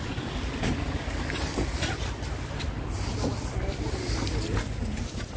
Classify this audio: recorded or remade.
recorded